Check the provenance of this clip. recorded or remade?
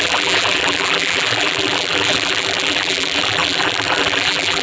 remade